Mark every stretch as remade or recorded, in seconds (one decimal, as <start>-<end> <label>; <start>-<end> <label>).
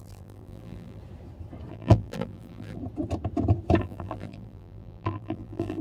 0.0-1.0 remade; 1.0-1.7 recorded; 1.7-2.8 remade; 2.8-3.8 recorded; 3.8-5.8 remade